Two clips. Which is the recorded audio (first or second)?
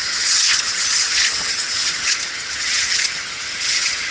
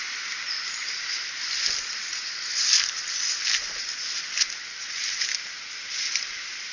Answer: second